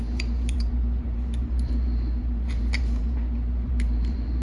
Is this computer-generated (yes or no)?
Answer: yes